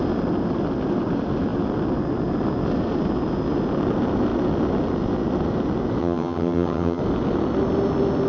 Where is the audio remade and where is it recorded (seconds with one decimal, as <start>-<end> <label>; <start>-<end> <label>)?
0.0-6.0 recorded; 6.0-7.0 remade; 7.0-8.3 recorded